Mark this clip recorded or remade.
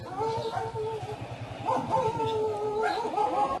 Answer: recorded